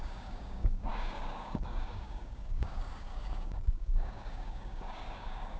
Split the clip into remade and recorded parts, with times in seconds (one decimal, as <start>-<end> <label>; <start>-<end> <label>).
0.0-5.6 remade